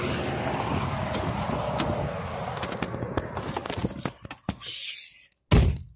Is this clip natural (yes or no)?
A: yes